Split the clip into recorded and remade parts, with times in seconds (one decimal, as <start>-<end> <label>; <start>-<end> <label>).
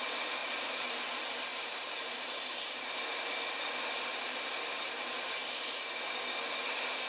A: 0.0-0.4 recorded; 0.4-1.0 remade; 1.0-1.5 recorded; 1.5-2.3 remade; 2.3-5.4 recorded; 5.4-6.0 remade; 6.0-7.1 recorded